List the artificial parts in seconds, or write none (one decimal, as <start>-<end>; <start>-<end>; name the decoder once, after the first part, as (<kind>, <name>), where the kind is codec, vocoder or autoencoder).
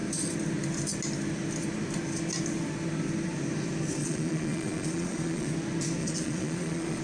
4.0-5.5 (vocoder, Vocos); 6.0-7.0